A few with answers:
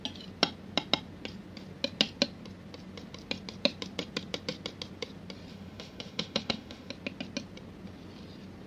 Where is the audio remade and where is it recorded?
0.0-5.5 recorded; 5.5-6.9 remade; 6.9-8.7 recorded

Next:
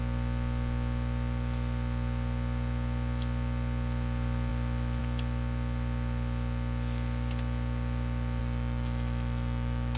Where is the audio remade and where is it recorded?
0.0-8.4 recorded; 8.4-10.0 remade

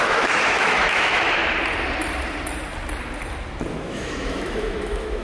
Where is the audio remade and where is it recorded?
0.0-1.4 remade; 1.4-3.7 recorded; 3.7-5.2 remade

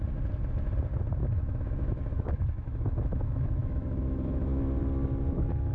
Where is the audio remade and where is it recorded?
0.0-1.2 recorded; 1.2-4.6 remade; 4.6-5.7 recorded